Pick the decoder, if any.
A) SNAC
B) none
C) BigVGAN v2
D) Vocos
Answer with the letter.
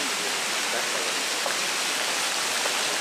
B